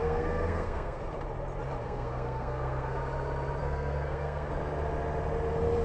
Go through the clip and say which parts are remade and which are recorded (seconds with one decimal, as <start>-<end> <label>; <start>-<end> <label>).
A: 0.0-1.0 remade; 1.0-1.8 recorded; 1.8-3.0 remade; 3.0-3.6 recorded; 3.6-4.5 remade; 4.5-5.8 recorded